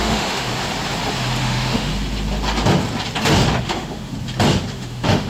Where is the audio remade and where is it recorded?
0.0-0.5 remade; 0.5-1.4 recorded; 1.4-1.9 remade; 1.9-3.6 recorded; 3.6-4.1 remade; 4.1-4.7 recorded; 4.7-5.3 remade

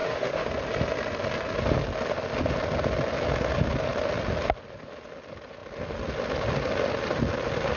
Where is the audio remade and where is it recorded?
0.0-0.5 remade; 0.5-7.8 recorded

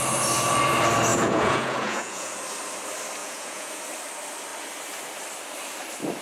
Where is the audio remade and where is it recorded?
0.0-1.1 recorded; 1.1-2.3 remade; 2.3-3.2 recorded; 3.2-3.8 remade; 3.8-6.2 recorded

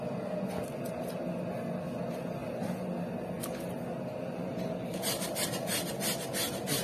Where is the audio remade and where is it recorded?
0.0-6.8 recorded

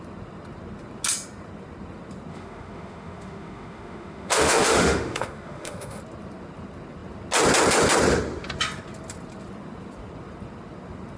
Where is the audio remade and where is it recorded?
0.0-2.3 recorded; 2.3-6.0 remade; 6.0-11.2 recorded

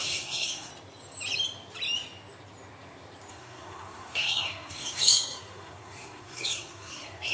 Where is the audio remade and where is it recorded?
0.0-0.7 remade; 0.7-3.3 recorded; 3.3-7.3 remade

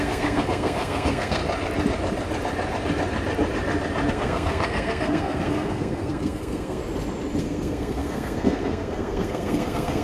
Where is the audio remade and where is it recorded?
0.0-1.4 remade; 1.4-4.1 recorded; 4.1-6.8 remade; 6.8-7.4 recorded; 7.4-10.0 remade

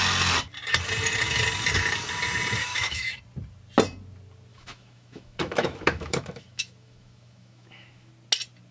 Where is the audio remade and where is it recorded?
0.0-2.6 recorded; 2.6-3.2 remade; 3.2-4.5 recorded; 4.5-8.1 remade; 8.1-8.7 recorded